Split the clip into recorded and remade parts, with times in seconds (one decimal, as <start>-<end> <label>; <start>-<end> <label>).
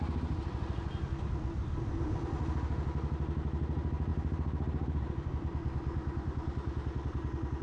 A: 0.0-4.1 recorded; 4.1-5.3 remade; 5.3-7.6 recorded